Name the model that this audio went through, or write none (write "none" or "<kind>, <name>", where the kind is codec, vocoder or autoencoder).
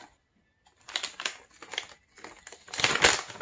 none